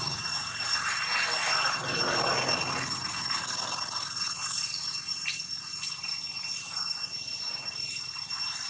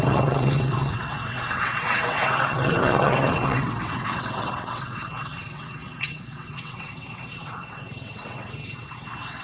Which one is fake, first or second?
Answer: second